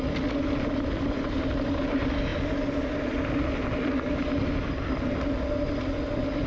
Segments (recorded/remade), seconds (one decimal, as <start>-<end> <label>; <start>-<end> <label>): 0.0-6.5 recorded